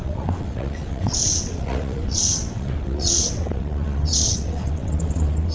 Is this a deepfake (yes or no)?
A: yes